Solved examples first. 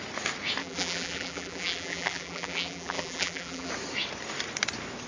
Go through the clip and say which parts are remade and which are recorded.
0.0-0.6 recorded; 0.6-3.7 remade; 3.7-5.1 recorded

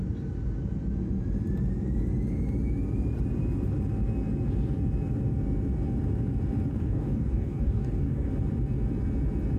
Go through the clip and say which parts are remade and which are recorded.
0.0-6.7 recorded; 6.7-8.3 remade; 8.3-9.6 recorded